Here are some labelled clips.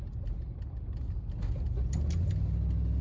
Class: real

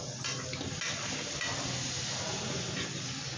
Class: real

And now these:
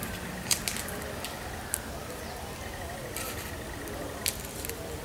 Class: real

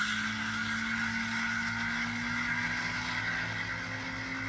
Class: real